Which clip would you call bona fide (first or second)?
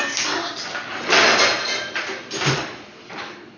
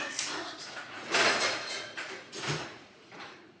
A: first